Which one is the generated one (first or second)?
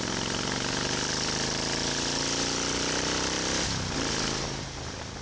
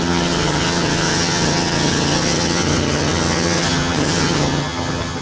second